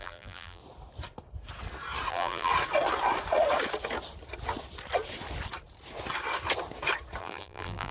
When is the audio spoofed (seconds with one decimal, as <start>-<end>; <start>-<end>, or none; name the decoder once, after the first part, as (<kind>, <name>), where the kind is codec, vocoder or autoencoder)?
0.0-0.6 (vocoder, BigVGAN v2); 2.1-2.5; 7.2-7.9